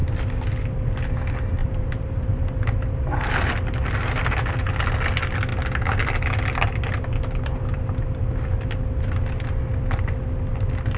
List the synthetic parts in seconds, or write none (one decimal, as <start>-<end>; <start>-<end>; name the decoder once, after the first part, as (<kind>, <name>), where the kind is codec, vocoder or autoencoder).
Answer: 1.6-3.3 (vocoder, BigVGAN v2)